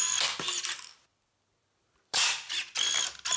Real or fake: real